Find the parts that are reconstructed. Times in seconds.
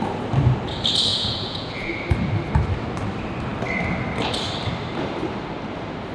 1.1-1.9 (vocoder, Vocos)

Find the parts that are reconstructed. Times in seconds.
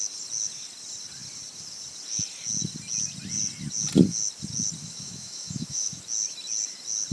4.8-6.0 (autoencoder, DAC-VAE)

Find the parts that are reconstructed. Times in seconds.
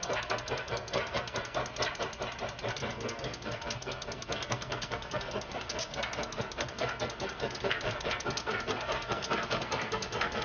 0.0-1.6 (codec, SNAC); 2.7-10.4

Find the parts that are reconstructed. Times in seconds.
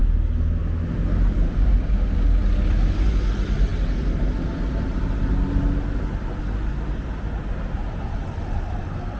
none